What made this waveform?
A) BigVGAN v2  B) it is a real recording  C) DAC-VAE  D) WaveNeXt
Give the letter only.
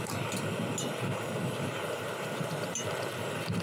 B